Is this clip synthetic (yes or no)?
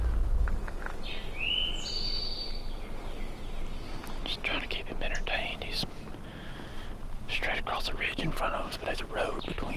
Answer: no